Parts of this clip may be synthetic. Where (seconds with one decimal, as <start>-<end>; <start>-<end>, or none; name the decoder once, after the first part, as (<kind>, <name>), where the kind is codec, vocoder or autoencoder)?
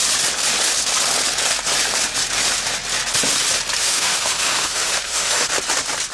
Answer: 3.8-5.5 (autoencoder, DAC-VAE)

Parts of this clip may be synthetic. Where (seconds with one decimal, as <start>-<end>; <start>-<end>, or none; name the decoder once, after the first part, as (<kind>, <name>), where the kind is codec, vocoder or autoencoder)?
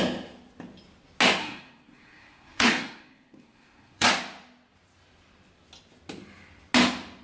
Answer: 1.4-4.1 (codec, SNAC)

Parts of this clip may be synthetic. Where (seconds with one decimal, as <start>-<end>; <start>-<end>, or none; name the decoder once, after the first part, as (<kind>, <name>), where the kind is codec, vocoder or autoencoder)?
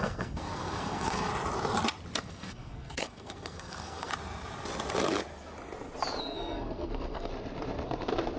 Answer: 0.0-1.3 (codec, SNAC); 2.2-4.1; 6.2-7.3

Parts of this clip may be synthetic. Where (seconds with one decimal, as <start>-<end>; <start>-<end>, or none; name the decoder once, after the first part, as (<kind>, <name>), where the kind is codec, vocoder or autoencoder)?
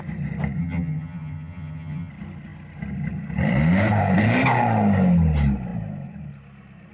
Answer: 0.6-2.1 (vocoder, HiFi-GAN)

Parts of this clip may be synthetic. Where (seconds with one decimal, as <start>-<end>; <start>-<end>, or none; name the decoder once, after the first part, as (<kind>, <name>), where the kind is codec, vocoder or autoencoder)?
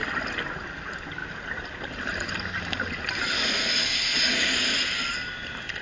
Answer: none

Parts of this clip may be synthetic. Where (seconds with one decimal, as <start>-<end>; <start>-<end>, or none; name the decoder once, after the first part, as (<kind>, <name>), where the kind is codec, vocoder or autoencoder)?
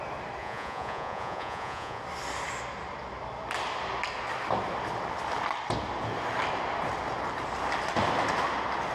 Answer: 0.4-2.0 (vocoder, Vocos)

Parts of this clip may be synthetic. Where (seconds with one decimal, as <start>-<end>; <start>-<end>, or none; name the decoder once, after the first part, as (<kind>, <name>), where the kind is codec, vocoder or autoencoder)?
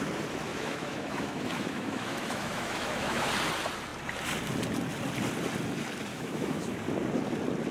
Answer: 0.5-3.3 (autoencoder, DAC-VAE); 6.1-6.8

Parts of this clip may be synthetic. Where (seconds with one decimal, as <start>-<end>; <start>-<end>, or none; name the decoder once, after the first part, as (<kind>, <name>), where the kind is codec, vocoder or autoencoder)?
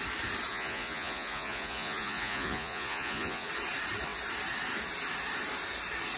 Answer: 0.5-3.5 (vocoder, Vocos)